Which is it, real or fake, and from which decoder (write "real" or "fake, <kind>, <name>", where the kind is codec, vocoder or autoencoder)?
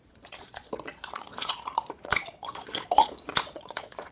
fake, vocoder, Vocos